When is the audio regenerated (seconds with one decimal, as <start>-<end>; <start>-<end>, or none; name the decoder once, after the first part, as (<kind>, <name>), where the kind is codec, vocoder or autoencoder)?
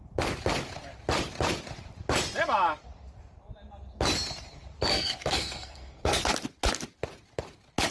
4.9-6.2 (codec, SNAC)